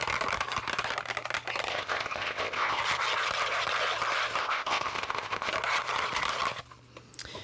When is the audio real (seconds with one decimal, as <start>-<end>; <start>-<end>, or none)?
0.0-1.7; 2.8-4.4; 5.5-7.4